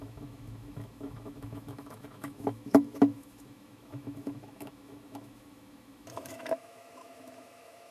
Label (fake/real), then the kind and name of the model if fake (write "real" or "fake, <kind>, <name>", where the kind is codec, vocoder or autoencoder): fake, autoencoder, DAC-VAE